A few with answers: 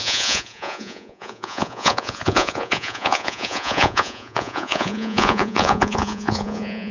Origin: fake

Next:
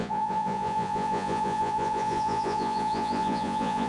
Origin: fake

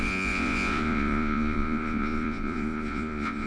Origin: fake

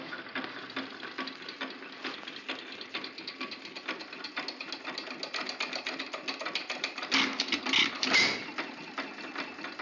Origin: real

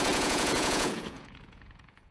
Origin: fake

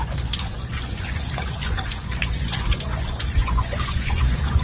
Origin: fake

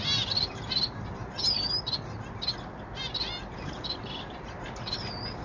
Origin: real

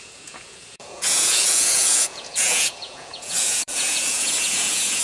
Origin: fake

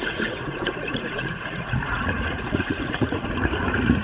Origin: fake